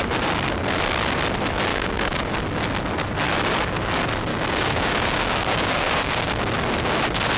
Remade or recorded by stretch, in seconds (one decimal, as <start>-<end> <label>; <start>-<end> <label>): 0.0-1.7 recorded; 1.7-2.3 remade; 2.3-4.3 recorded; 4.3-6.3 remade; 6.3-7.4 recorded